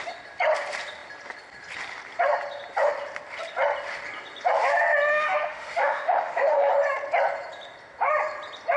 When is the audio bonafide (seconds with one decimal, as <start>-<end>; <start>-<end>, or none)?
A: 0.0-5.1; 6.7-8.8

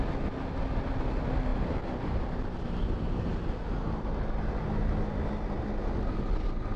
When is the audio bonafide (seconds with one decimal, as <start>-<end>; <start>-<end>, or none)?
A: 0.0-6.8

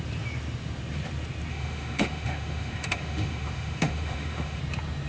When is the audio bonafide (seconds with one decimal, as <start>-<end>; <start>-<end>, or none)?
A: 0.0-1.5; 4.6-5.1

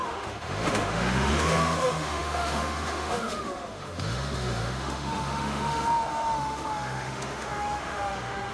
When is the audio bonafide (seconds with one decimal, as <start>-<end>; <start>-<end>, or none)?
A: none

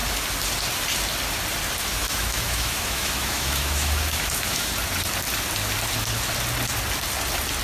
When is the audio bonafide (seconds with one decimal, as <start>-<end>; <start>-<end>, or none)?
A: 0.0-1.9; 4.7-7.6

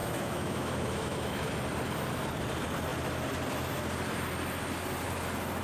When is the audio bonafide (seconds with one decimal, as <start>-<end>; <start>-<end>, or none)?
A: 1.5-5.6